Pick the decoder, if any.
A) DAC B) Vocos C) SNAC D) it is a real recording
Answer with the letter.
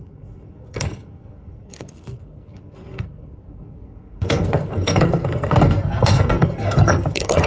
C